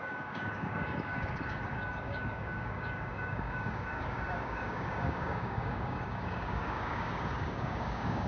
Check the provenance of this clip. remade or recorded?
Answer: remade